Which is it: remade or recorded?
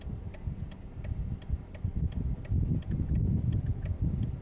recorded